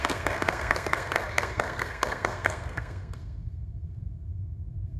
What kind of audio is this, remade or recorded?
remade